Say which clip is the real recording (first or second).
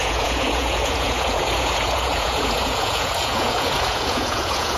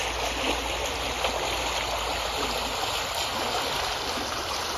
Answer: second